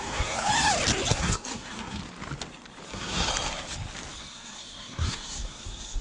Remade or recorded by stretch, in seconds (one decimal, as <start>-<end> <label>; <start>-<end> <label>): 0.0-0.5 remade; 0.5-1.1 recorded; 1.1-2.0 remade; 2.0-2.9 recorded; 2.9-3.3 remade; 3.3-4.2 recorded; 4.2-6.0 remade